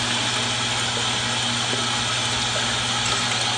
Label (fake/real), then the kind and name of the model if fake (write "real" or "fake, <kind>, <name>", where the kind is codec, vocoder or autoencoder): real